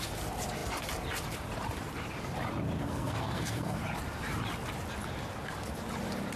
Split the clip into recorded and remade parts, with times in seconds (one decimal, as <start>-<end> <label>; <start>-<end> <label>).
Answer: 0.0-2.8 recorded; 2.8-3.8 remade; 3.8-6.4 recorded